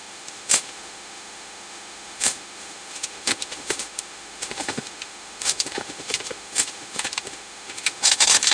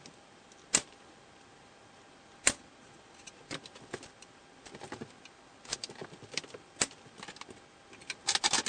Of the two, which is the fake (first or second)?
first